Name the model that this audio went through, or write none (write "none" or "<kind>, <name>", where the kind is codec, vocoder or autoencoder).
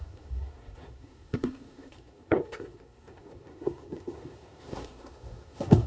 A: codec, SNAC